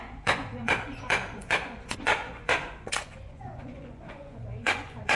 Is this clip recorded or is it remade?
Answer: remade